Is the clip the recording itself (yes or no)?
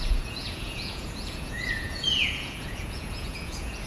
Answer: no